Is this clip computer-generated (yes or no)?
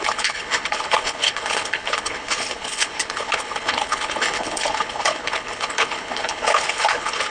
yes